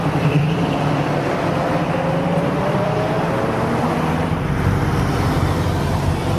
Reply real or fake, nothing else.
fake